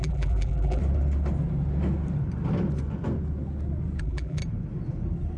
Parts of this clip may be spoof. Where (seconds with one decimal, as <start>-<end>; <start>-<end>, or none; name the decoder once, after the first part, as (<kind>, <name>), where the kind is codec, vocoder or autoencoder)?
0.0-0.8 (vocoder, BigVGAN v2); 4.0-4.4